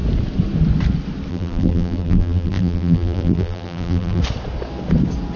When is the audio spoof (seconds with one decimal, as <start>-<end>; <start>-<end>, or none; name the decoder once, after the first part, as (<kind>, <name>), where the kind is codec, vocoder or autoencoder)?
1.3-4.2 (vocoder, BigVGAN v2)